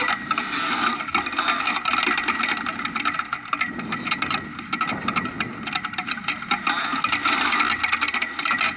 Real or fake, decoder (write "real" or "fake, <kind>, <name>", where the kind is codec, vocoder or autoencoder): real